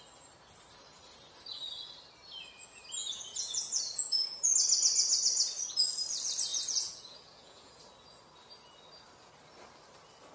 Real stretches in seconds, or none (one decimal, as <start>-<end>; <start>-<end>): 0.0-3.0; 4.5-6.5; 7.8-10.3